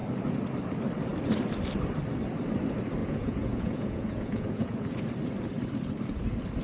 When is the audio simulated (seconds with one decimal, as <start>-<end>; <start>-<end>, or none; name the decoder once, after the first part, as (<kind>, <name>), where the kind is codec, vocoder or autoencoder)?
3.0-5.0 (vocoder, Vocos)